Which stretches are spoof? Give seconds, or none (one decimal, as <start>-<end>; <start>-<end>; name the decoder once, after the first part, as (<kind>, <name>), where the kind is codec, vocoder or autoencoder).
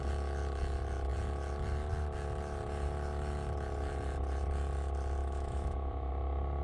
5.2-6.1 (autoencoder, DAC-VAE)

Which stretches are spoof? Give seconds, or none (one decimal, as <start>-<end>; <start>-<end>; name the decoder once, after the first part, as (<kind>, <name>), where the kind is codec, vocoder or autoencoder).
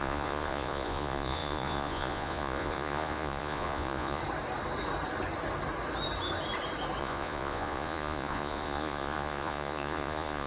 0.0-4.2 (vocoder, Vocos); 7.0-10.5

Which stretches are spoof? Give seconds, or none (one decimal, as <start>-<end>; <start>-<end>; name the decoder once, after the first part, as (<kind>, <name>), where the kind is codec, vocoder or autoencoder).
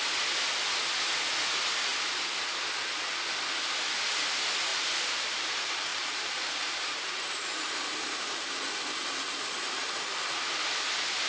1.9-2.7 (vocoder, BigVGAN v2); 4.7-5.2; 5.9-8.5